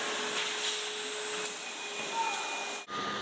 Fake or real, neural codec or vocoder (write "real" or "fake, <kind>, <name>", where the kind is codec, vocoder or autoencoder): real